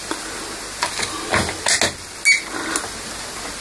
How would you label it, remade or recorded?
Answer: recorded